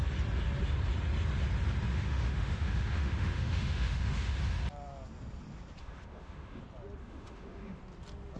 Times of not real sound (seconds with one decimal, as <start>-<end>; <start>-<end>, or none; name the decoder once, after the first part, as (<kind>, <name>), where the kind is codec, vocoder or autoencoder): 1.9-4.4 (autoencoder, DAC-VAE); 5.8-6.6; 7.0-7.8